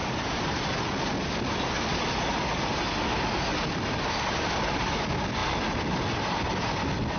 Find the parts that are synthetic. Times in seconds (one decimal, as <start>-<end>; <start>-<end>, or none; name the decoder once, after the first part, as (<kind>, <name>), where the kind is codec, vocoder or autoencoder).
none